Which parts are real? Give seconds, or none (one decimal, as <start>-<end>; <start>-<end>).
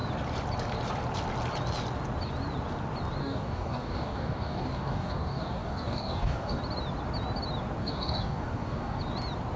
0.0-3.2; 6.6-7.8; 9.0-9.6